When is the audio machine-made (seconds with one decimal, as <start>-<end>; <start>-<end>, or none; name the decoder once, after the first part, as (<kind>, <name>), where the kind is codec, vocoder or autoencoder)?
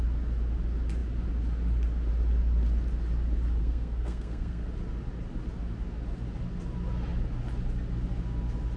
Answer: 3.6-4.7 (codec, SNAC)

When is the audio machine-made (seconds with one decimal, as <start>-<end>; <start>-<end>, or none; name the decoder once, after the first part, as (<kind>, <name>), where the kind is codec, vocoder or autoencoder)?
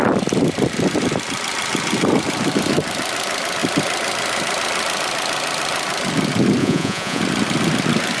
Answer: 6.6-7.2 (vocoder, Vocos)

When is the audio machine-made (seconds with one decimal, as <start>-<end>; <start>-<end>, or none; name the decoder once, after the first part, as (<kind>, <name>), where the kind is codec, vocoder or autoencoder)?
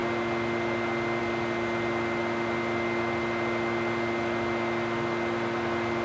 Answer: none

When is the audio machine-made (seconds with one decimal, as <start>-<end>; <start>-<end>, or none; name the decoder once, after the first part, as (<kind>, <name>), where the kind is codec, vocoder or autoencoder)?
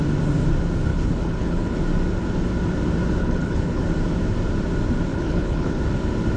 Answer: 0.9-1.8 (codec, HILCodec); 3.2-3.8; 5.1-5.8